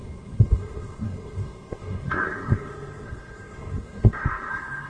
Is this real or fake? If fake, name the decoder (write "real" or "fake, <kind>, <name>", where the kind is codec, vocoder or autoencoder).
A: fake, codec, SNAC